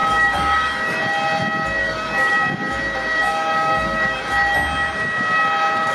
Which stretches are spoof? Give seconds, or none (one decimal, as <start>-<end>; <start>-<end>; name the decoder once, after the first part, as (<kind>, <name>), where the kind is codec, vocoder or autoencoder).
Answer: 0.0-1.0 (codec, DAC); 1.8-2.3; 3.2-4.2